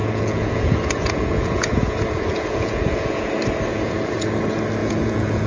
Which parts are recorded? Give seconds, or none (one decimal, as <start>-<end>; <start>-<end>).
3.3-3.7; 4.3-4.8